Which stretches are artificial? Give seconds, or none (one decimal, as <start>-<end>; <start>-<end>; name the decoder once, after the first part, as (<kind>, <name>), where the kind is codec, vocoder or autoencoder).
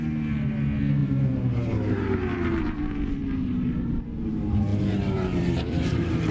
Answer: 1.0-2.8 (vocoder, BigVGAN v2); 4.7-6.3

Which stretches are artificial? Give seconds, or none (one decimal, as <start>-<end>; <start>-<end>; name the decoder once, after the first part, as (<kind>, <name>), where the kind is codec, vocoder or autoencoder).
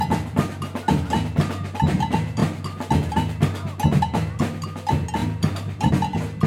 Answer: 5.2-5.9 (vocoder, BigVGAN v2)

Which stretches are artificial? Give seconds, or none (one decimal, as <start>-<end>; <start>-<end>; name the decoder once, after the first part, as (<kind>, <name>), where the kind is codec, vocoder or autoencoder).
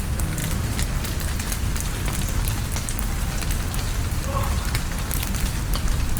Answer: 4.0-4.9 (vocoder, BigVGAN v2)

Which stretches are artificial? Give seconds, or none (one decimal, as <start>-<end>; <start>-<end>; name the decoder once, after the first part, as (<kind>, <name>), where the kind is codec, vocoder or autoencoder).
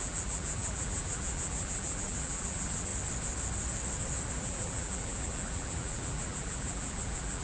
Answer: 0.0-2.9 (vocoder, BigVGAN v2); 4.3-7.4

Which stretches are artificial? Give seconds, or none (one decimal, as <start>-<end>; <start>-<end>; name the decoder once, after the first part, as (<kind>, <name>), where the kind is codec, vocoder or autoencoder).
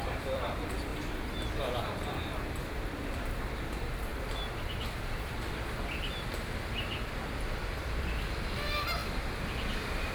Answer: 0.0-0.9 (vocoder, BigVGAN v2); 1.6-10.1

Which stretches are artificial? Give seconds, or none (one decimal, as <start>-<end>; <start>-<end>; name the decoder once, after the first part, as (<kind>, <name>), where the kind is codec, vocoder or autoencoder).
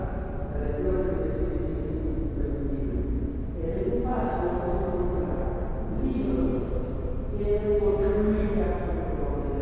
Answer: 6.5-7.4 (vocoder, BigVGAN v2)